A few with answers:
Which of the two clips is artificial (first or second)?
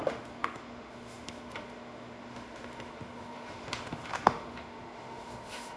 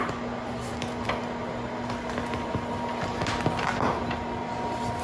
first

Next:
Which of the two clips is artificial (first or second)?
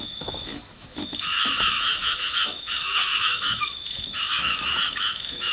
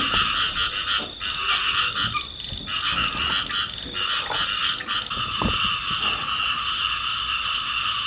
first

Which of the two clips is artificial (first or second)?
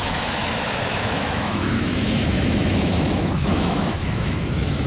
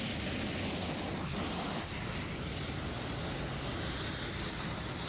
first